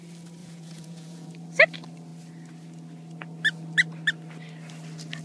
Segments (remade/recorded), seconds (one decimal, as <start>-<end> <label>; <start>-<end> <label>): 0.0-0.4 recorded; 0.4-1.3 remade; 1.3-5.2 recorded

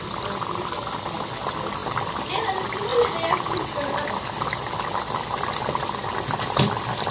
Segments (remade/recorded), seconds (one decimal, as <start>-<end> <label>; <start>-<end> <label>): 0.0-7.1 recorded